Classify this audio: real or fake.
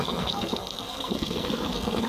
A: fake